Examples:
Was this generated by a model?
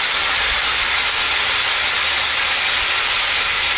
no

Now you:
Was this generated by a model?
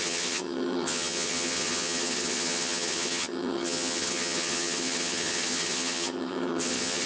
yes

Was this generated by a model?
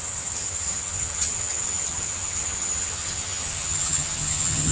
yes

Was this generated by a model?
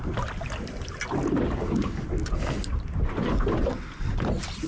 no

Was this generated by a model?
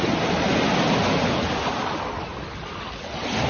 no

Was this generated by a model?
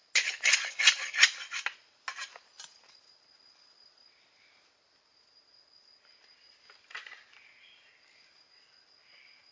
no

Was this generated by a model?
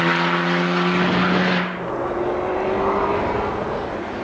no